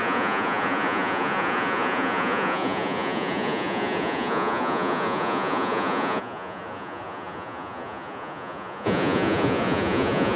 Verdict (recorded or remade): remade